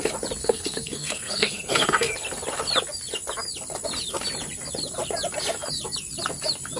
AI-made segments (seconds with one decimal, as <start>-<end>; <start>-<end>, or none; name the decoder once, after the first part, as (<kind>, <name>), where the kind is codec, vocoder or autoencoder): 0.4-2.1 (codec, SNAC)